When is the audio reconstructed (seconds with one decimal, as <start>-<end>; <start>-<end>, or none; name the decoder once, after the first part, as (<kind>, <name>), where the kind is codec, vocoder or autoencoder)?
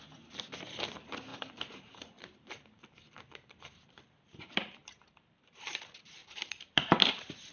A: 1.3-5.8 (vocoder, BigVGAN v2); 6.2-7.1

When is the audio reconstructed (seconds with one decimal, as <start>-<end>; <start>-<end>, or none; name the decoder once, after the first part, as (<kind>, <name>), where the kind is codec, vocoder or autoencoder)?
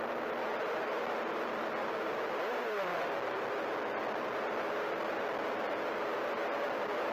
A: 0.0-2.9 (vocoder, BigVGAN v2)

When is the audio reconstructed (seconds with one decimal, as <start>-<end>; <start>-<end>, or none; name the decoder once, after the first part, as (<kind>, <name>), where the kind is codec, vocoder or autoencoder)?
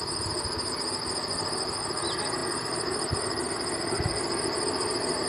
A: none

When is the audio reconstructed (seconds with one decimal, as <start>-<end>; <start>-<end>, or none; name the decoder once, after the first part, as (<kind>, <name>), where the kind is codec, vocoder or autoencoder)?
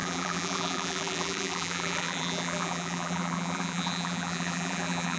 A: 0.0-5.2 (vocoder, BigVGAN v2)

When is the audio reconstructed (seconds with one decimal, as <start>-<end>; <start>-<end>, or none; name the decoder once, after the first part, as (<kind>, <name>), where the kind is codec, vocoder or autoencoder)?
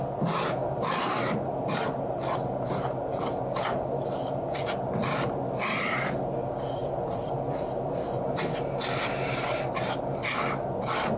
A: 0.6-1.4 (vocoder, BigVGAN v2); 6.8-8.4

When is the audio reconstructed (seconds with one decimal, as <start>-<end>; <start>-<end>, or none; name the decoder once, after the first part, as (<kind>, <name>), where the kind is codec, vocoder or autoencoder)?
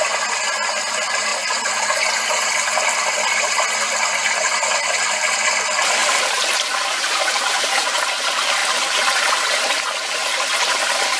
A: 6.0-8.0 (vocoder, BigVGAN v2)